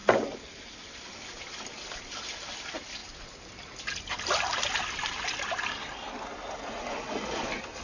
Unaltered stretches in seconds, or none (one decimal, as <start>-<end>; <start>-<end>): 0.0-7.8